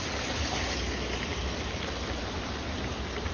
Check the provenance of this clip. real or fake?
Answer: real